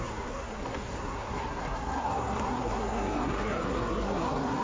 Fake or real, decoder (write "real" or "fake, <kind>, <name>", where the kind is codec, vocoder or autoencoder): fake, codec, SNAC